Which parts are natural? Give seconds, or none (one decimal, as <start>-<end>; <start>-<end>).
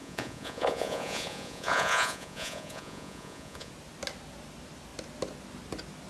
3.7-6.1